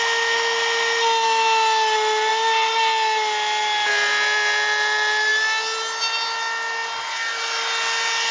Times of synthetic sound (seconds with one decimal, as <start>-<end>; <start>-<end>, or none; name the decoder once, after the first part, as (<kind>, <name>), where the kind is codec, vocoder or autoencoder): none